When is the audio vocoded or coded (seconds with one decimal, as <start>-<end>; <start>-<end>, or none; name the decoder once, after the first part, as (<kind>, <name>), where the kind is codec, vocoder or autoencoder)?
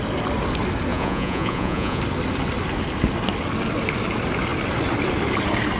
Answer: 0.9-2.0 (vocoder, Vocos)